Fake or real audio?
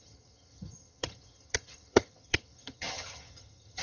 fake